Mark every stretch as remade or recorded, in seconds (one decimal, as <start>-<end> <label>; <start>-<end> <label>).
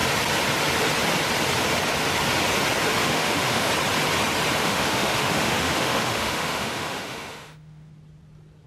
0.0-3.0 recorded; 3.0-3.7 remade; 3.7-4.6 recorded; 4.6-7.9 remade; 7.9-8.7 recorded